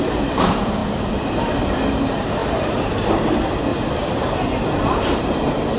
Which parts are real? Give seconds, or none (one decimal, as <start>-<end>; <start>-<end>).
3.7-5.3